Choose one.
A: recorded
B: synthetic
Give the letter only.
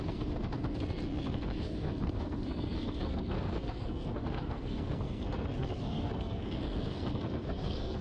B